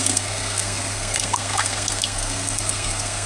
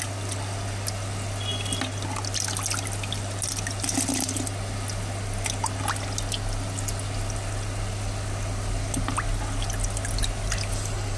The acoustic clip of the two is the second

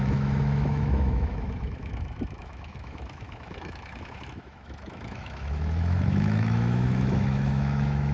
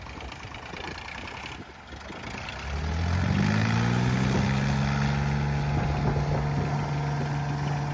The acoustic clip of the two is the second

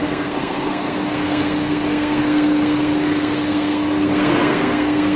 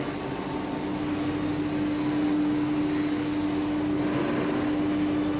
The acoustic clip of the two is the second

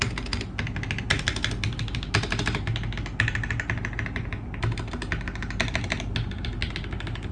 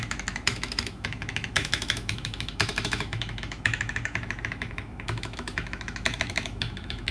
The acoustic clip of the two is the first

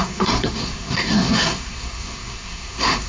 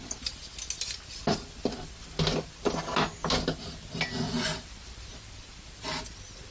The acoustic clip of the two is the second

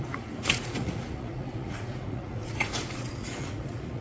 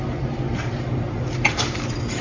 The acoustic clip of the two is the second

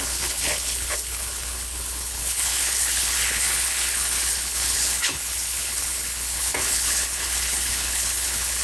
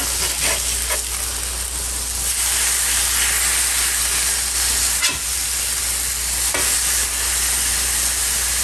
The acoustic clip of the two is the second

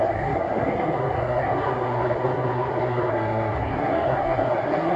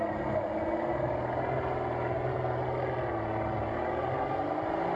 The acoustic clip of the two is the second